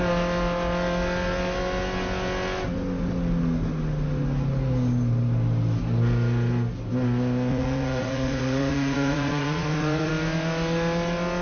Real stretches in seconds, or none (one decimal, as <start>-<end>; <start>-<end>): 0.0-7.5; 10.1-11.4